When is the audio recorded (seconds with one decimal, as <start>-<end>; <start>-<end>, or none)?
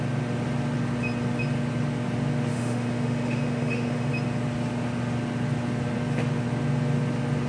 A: 0.0-2.5; 4.1-7.5